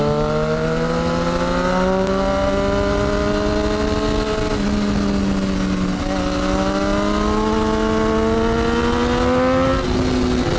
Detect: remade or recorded recorded